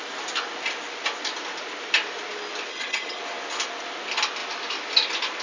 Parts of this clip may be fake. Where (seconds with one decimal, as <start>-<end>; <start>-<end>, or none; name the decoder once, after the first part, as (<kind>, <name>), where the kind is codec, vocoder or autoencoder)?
2.7-3.2 (vocoder, HiFi-GAN)